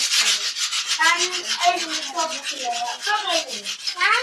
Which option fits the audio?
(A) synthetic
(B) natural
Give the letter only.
B